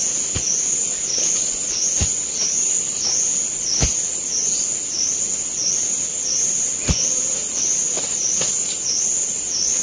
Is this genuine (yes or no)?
yes